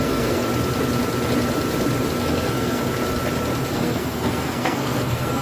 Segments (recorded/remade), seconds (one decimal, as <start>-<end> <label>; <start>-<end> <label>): 0.0-0.5 remade; 0.5-2.2 recorded; 2.2-2.8 remade; 2.8-3.7 recorded; 3.7-5.4 remade